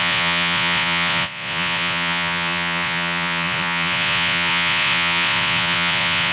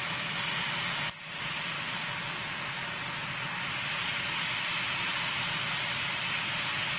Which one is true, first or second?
second